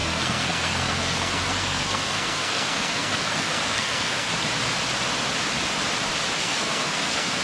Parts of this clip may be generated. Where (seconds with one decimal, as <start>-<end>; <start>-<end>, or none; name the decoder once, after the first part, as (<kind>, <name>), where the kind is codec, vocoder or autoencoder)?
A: 0.0-4.3 (codec, SNAC); 6.4-7.4